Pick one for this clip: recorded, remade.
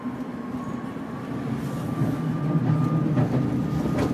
recorded